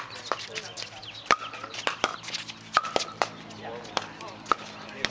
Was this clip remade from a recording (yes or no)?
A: no